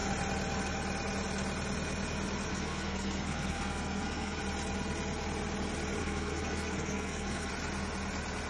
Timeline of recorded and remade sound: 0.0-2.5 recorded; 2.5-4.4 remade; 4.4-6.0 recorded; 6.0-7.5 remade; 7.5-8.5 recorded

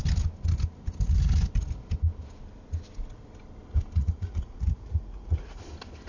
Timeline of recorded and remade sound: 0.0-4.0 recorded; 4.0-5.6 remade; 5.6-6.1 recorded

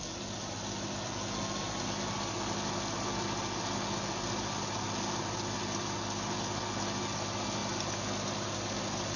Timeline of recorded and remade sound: 0.0-9.2 recorded

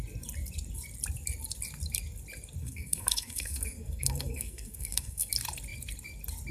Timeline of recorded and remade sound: 0.0-2.6 recorded; 2.6-5.3 remade; 5.3-6.5 recorded

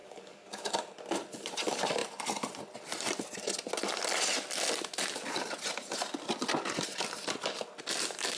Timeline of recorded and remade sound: 0.0-0.7 remade; 0.7-8.4 recorded